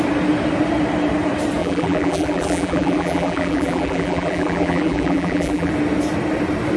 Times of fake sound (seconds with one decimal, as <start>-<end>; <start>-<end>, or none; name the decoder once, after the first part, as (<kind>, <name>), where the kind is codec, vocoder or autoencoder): 1.6-5.7 (vocoder, BigVGAN v2)